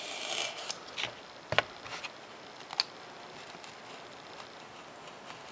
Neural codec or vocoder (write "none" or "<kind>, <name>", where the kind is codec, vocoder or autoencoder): none